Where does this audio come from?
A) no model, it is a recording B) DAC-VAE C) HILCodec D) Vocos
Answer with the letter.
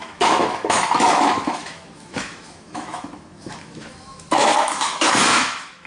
B